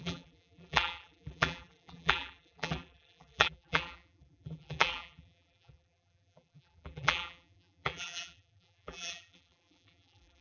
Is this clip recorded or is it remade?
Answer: remade